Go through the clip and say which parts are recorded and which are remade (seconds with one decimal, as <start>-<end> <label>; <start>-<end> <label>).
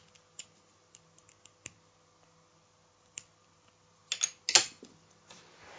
0.0-5.8 recorded